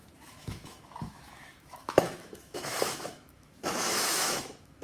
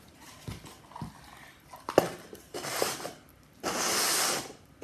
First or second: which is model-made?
first